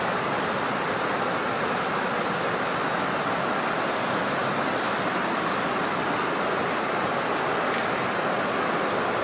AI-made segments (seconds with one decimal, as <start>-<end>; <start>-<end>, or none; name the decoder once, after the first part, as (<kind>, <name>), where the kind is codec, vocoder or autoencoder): none